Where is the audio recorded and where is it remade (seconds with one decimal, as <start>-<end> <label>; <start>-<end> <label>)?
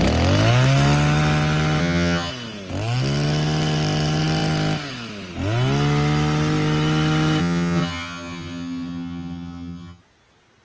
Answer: 0.0-1.8 recorded; 1.8-2.3 remade; 2.3-7.4 recorded; 7.4-10.0 remade; 10.0-10.6 recorded